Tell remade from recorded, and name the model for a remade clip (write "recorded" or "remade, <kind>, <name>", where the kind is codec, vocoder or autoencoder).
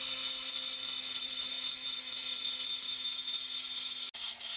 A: recorded